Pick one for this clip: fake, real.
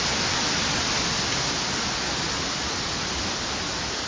real